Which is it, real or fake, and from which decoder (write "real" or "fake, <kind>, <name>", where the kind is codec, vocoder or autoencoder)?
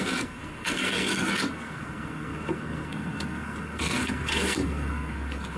fake, codec, SNAC